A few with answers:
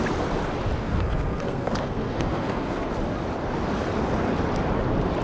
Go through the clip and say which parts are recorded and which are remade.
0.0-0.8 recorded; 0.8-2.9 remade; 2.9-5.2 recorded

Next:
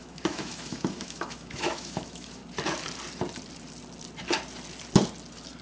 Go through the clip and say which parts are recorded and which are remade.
0.0-2.4 remade; 2.4-5.6 recorded